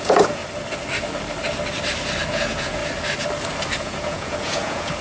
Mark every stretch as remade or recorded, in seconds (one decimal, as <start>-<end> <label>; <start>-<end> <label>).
0.0-0.4 remade; 0.4-2.3 recorded; 2.3-2.8 remade; 2.8-3.8 recorded; 3.8-5.0 remade